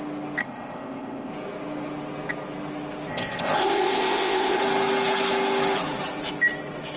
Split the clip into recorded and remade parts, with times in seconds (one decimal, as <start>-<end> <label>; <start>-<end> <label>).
0.0-0.4 recorded; 0.4-1.3 remade; 1.3-3.1 recorded; 3.1-4.6 remade; 4.6-7.0 recorded